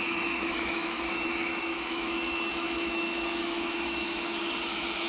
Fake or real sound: fake